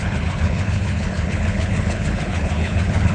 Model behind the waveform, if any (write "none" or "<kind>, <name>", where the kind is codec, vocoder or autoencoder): codec, HILCodec